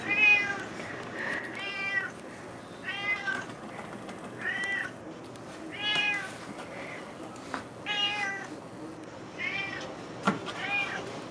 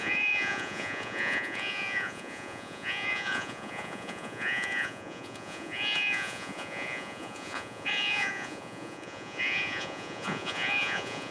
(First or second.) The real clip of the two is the first